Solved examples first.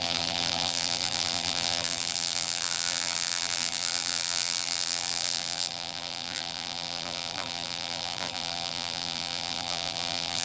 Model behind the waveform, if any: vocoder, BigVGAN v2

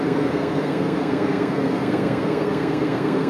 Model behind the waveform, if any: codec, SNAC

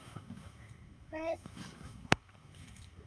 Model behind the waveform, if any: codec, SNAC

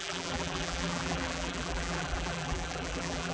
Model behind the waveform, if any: vocoder, BigVGAN v2